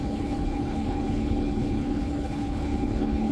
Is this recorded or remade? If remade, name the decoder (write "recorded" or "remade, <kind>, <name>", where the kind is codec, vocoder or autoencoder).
remade, codec, HILCodec